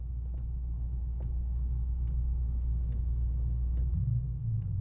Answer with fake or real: real